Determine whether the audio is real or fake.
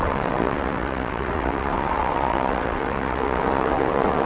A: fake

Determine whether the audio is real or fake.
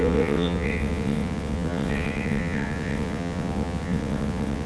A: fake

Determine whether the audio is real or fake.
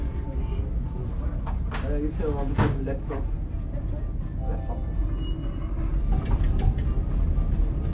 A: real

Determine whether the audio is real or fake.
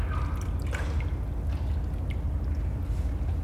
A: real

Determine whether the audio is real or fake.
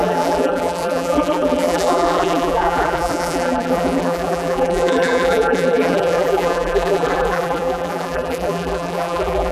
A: fake